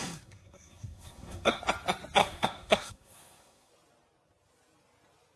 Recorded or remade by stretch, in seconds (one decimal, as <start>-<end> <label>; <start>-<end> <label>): 0.0-1.6 remade; 1.6-2.2 recorded; 2.2-3.7 remade; 3.7-5.4 recorded